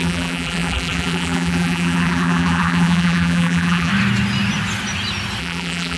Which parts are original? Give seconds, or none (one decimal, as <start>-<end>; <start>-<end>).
3.9-5.4